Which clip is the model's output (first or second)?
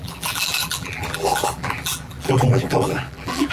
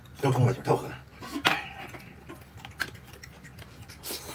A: first